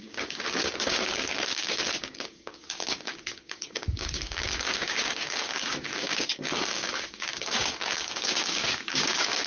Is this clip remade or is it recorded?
remade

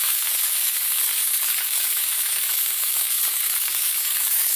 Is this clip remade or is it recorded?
remade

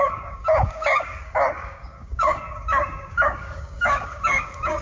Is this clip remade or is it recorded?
remade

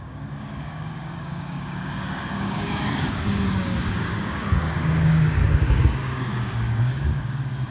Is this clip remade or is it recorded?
remade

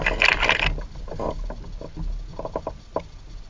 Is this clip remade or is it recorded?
recorded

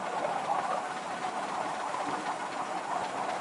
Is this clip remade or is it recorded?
recorded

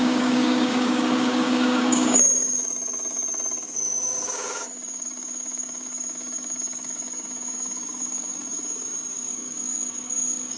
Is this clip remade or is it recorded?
remade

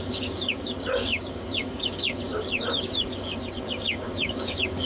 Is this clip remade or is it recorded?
remade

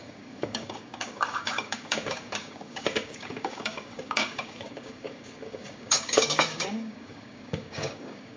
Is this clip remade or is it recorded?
remade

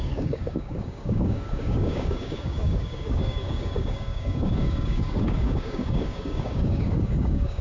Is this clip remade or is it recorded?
remade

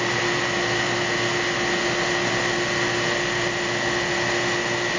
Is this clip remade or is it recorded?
recorded